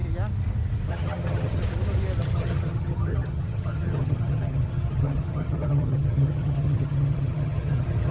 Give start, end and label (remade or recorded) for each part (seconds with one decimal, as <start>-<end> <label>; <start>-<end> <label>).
0.0-0.9 recorded; 0.9-1.6 remade; 1.6-2.2 recorded; 2.2-8.1 remade